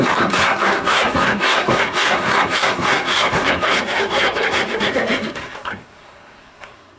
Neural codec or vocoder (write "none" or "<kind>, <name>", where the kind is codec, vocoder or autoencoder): codec, SNAC